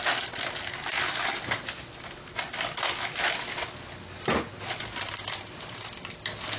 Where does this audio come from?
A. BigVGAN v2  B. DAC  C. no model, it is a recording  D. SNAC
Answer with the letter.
C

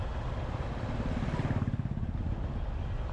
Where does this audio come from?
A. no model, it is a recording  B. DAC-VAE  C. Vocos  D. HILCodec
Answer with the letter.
A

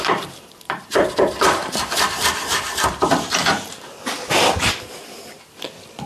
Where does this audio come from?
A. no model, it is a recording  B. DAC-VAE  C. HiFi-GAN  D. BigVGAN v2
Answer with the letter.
D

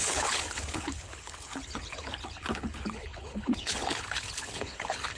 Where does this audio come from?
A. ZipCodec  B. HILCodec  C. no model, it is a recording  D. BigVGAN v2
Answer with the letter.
B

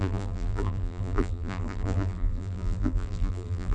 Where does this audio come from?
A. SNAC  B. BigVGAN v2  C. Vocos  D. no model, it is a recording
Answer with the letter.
B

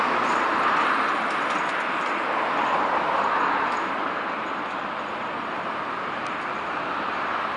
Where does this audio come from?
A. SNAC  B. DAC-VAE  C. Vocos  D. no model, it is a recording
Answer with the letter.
D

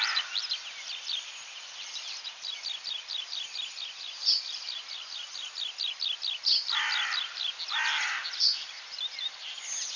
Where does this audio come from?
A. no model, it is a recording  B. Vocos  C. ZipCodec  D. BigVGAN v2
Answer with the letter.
A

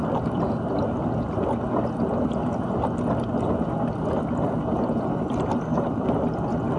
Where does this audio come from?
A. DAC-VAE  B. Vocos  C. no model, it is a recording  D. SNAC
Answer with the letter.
C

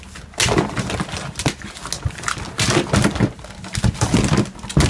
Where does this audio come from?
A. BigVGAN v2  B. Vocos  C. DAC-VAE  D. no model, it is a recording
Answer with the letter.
D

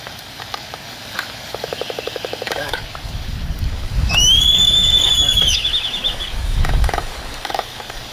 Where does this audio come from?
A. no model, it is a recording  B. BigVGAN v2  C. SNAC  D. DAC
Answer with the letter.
D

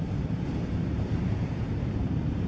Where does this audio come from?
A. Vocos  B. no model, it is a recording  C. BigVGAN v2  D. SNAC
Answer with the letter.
C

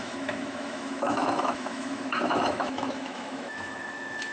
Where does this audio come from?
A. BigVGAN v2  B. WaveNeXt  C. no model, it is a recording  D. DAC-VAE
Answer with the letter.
D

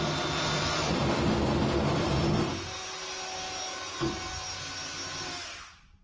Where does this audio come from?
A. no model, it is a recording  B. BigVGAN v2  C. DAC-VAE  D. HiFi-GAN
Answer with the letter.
A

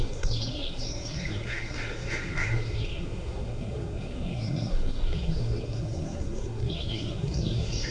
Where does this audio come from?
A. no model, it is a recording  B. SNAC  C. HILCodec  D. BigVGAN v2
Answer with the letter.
B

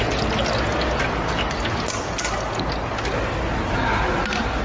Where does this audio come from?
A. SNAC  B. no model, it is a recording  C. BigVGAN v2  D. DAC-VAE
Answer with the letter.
B